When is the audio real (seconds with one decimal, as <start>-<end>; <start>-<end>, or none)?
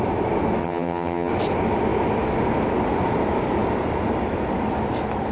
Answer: 0.0-0.6; 1.3-5.3